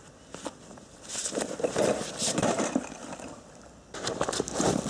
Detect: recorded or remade recorded